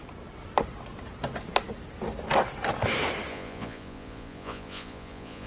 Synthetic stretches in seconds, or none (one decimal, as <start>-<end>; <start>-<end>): 3.3-5.5